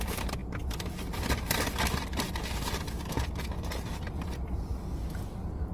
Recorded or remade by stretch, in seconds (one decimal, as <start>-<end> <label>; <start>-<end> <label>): 0.0-5.7 recorded